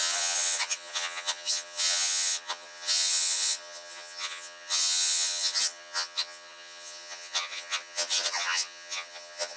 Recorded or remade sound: remade